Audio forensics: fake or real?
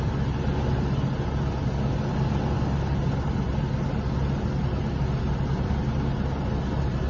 real